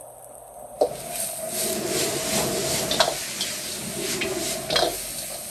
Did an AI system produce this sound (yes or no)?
no